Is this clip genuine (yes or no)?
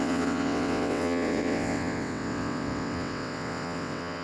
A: no